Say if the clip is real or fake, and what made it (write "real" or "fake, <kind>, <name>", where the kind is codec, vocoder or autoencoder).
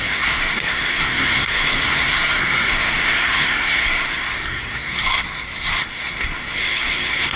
fake, codec, SNAC